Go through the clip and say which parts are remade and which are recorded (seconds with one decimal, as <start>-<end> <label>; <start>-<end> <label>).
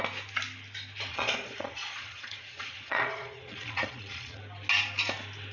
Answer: 0.0-1.1 recorded; 1.1-4.4 remade; 4.4-5.5 recorded